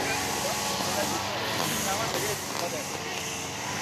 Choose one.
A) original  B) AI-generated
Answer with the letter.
A